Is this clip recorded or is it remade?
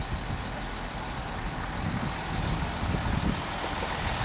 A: recorded